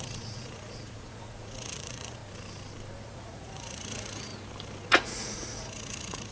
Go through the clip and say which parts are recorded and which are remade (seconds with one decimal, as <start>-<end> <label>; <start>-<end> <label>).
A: 0.0-2.2 remade; 2.2-3.0 recorded; 3.0-4.3 remade; 4.3-4.9 recorded; 4.9-6.3 remade